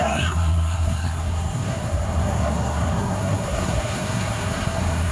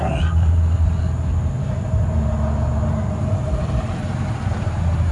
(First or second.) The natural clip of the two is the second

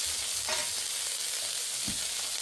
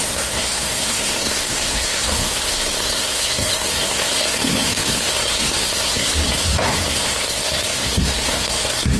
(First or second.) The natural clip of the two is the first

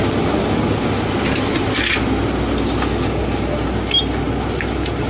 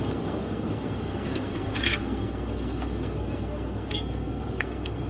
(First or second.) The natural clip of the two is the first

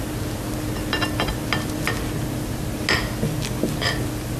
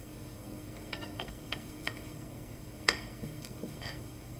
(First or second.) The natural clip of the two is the first